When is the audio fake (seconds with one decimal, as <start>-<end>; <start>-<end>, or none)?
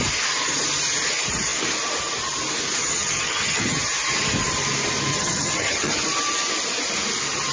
2.8-3.8; 5.1-6.0